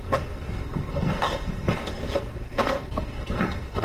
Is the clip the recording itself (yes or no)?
no